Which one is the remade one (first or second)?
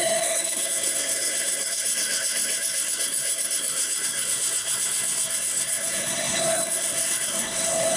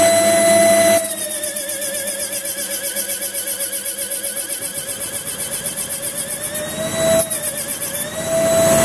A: first